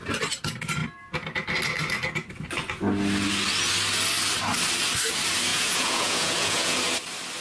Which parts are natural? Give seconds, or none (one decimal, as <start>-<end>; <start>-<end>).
0.0-5.5; 6.8-7.4